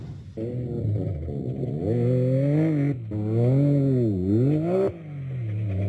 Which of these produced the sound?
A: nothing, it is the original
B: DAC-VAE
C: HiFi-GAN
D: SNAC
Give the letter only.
A